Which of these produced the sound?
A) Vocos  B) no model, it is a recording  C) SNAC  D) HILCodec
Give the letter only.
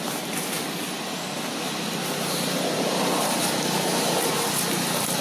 B